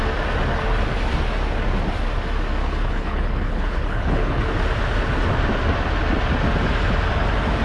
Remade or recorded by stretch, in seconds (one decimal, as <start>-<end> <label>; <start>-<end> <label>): 0.0-2.6 recorded; 2.6-4.4 remade; 4.4-7.6 recorded